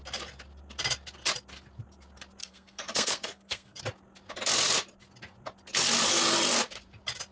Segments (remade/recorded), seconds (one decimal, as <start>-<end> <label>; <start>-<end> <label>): 0.0-2.4 recorded; 2.4-3.8 remade; 3.8-7.3 recorded